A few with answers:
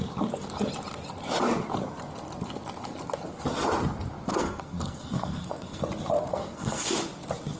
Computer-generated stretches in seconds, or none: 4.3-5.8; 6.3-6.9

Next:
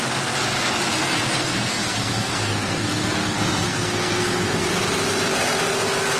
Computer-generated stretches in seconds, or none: 1.0-4.7

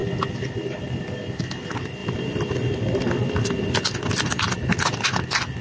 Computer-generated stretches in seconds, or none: none

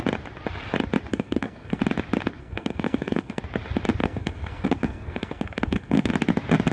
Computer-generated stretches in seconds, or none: 1.1-1.8; 2.4-3.4; 4.0-6.1

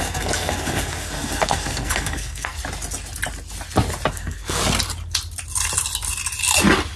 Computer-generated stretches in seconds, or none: 0.0-2.6; 4.1-4.6

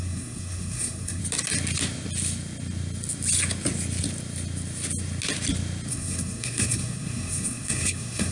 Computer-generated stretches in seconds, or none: 0.0-1.2; 5.9-8.3